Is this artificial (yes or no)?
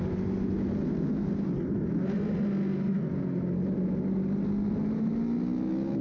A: no